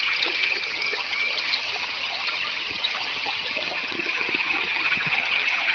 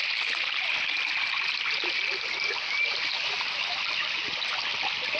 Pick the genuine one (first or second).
second